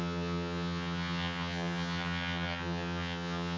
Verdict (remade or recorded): remade